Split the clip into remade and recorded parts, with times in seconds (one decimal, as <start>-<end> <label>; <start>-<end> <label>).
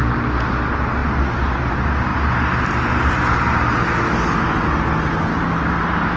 0.0-6.2 recorded